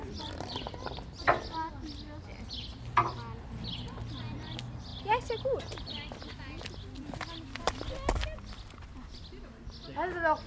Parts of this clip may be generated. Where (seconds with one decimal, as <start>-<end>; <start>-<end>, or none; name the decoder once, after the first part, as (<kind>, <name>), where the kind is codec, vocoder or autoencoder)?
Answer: none